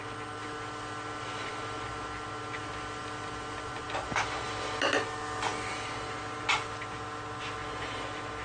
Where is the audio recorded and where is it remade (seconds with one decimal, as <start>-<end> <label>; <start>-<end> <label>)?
0.0-8.4 recorded